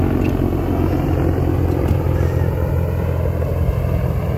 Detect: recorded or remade recorded